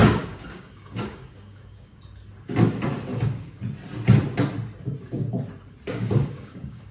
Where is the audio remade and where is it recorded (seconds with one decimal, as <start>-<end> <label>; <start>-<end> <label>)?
0.0-2.0 remade; 2.0-3.1 recorded; 3.1-3.6 remade; 3.6-5.9 recorded; 5.9-6.9 remade